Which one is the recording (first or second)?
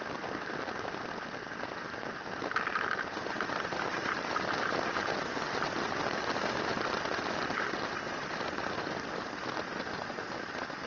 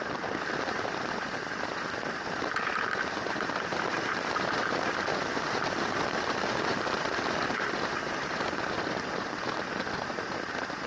first